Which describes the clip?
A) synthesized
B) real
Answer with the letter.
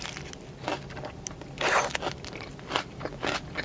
B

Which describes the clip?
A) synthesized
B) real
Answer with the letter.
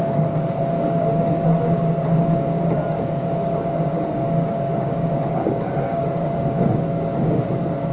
A